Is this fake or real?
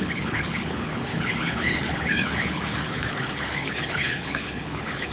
fake